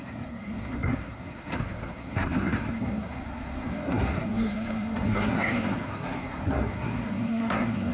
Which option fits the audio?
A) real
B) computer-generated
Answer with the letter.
B